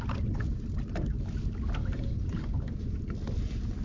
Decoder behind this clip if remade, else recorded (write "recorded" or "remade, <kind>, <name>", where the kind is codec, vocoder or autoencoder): recorded